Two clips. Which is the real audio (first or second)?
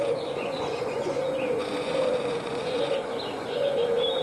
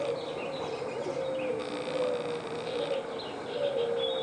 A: second